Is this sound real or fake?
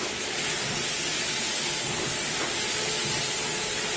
real